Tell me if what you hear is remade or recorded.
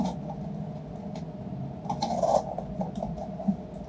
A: recorded